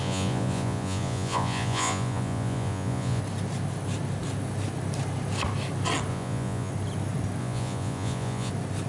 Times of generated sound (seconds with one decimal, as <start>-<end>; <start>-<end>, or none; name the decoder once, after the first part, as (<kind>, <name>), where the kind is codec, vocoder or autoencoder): 0.0-3.2 (vocoder, Vocos); 6.1-6.7; 7.4-8.5